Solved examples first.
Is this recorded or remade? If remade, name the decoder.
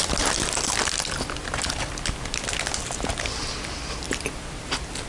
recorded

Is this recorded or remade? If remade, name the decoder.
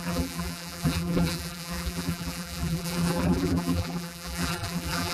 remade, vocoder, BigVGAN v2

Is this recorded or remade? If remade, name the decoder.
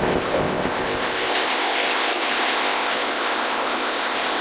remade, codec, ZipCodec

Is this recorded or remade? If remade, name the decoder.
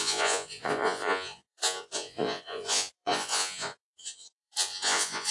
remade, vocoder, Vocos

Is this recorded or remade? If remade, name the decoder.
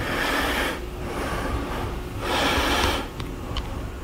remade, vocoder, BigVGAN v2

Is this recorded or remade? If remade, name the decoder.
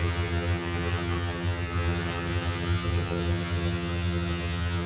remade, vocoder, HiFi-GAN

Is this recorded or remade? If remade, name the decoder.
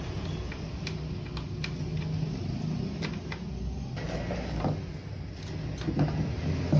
recorded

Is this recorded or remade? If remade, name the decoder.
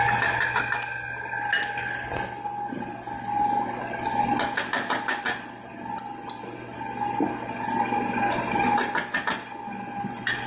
recorded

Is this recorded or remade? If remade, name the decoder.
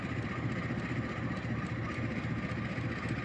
recorded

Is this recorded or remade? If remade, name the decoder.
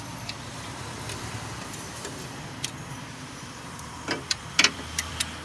remade, vocoder, BigVGAN v2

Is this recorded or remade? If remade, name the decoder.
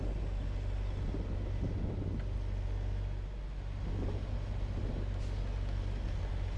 recorded